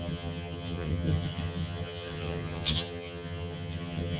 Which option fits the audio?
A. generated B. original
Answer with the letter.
A